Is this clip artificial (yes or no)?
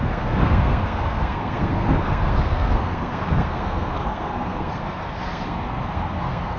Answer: yes